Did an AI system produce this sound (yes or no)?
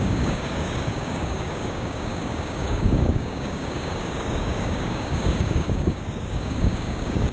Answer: yes